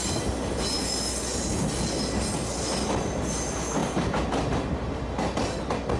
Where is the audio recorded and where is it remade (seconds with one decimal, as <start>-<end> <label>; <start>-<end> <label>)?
0.0-6.0 recorded